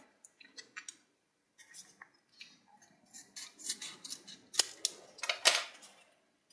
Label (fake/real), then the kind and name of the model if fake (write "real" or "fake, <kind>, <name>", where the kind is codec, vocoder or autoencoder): real